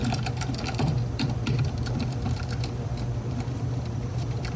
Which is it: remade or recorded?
remade